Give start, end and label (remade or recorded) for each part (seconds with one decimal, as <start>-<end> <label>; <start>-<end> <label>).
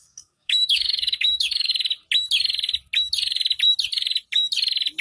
0.0-1.7 remade; 1.7-5.0 recorded